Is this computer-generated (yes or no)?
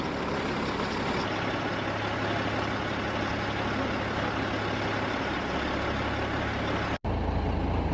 no